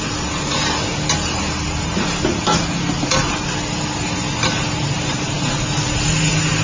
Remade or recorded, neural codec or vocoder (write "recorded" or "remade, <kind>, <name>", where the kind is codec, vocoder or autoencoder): recorded